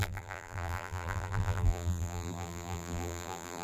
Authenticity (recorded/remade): remade